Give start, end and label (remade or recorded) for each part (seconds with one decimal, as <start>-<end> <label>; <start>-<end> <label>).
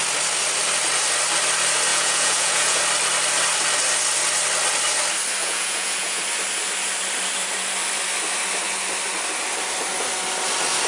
0.0-1.9 recorded; 1.9-2.8 remade; 2.8-5.4 recorded; 5.4-6.2 remade; 6.2-10.9 recorded